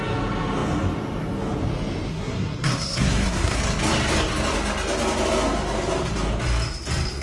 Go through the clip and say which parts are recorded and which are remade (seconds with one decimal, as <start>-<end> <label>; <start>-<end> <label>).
0.0-2.1 recorded; 2.1-3.6 remade; 3.6-7.2 recorded